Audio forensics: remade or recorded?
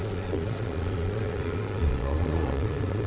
remade